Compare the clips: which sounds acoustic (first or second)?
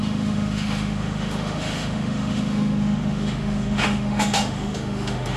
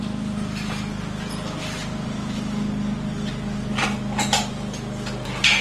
second